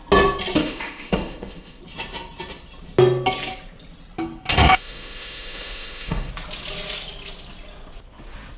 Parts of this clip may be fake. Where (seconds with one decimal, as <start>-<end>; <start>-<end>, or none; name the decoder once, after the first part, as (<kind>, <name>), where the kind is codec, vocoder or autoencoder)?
0.6-1.8 (autoencoder, DAC-VAE); 4.5-6.3